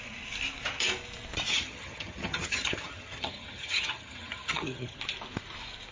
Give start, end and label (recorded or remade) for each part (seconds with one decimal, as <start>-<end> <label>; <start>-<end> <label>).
0.0-1.5 recorded; 1.5-5.0 remade; 5.0-5.9 recorded